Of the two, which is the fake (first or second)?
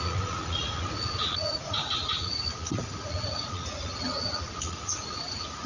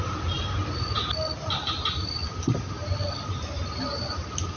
first